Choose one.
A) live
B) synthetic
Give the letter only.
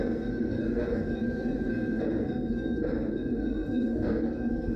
B